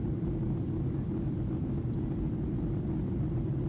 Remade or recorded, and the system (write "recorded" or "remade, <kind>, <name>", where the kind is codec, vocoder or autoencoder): remade, vocoder, BigVGAN v2